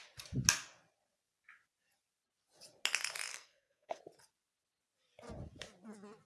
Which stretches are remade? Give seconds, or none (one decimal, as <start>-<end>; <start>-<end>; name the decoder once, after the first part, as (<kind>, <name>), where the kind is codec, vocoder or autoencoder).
3.3-4.0 (codec, SNAC)